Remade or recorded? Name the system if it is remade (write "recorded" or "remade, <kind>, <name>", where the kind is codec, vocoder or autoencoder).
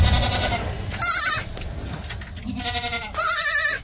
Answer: recorded